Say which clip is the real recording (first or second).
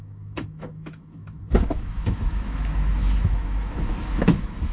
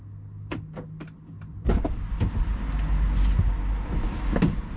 second